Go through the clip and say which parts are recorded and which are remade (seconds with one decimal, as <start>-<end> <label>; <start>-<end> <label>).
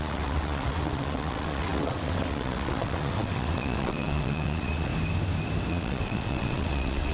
0.0-4.9 remade; 4.9-5.7 recorded; 5.7-7.1 remade